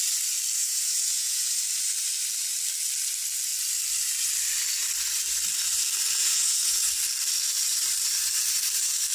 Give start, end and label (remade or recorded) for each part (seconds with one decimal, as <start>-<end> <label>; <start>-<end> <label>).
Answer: 0.0-0.6 recorded; 0.6-1.6 remade; 1.6-6.2 recorded; 6.2-6.9 remade; 6.9-9.1 recorded